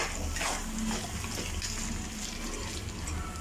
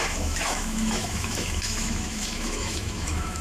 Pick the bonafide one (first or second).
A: first